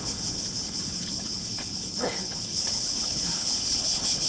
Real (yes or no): no